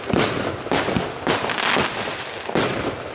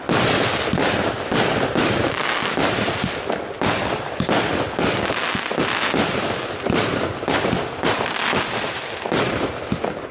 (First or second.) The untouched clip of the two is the first